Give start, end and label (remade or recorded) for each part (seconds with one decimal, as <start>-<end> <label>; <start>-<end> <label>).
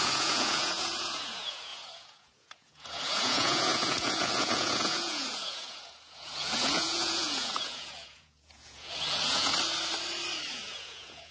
0.0-9.5 remade; 9.5-10.5 recorded; 10.5-11.3 remade